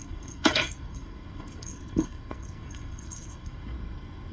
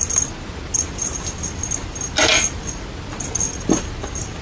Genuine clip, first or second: second